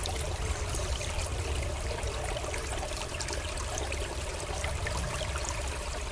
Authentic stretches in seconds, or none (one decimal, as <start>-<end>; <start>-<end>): 0.0-6.1